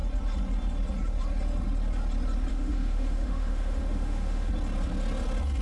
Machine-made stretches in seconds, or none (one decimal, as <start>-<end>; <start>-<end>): 2.5-4.5